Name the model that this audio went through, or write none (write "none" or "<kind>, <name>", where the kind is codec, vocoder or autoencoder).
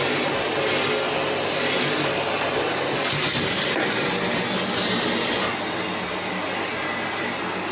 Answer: none